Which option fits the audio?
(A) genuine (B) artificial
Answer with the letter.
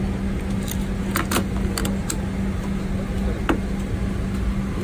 A